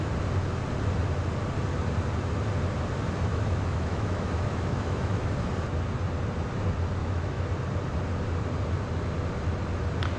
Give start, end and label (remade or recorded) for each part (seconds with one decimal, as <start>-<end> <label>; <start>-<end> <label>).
0.0-3.3 recorded; 3.3-5.3 remade; 5.3-7.0 recorded; 7.0-7.5 remade; 7.5-10.2 recorded